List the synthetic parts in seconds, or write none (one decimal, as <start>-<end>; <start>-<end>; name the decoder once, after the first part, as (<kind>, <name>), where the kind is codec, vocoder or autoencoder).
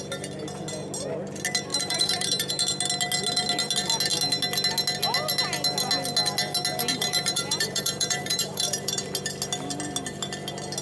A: 1.7-2.5 (vocoder, BigVGAN v2); 6.9-9.0